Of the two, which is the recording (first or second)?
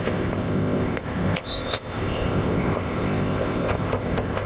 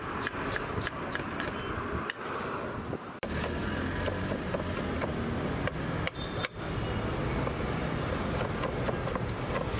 second